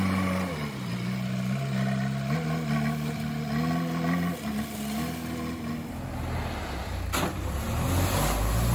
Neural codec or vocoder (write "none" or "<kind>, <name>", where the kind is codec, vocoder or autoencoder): none